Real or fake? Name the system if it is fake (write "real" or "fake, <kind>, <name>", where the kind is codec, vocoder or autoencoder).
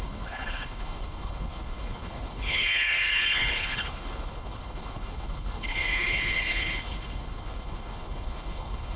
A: fake, codec, HILCodec